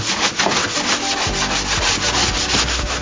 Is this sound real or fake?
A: real